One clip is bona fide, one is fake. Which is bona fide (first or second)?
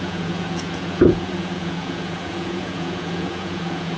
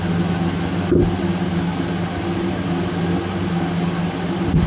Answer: second